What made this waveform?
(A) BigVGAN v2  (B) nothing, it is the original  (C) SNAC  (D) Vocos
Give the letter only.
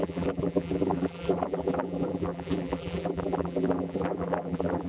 A